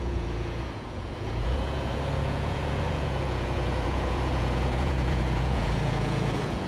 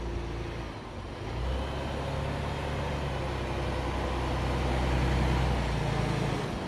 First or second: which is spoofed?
first